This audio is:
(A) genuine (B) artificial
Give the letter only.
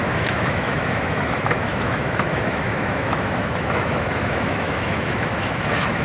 B